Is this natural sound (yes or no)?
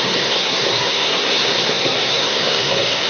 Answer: no